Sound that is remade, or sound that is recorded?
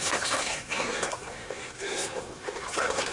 remade